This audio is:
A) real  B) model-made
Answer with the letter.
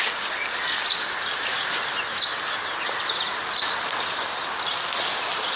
A